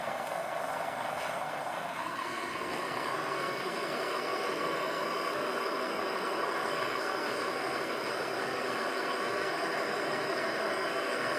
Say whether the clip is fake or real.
fake